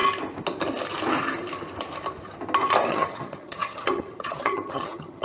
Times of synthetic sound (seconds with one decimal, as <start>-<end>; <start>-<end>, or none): 2.9-5.2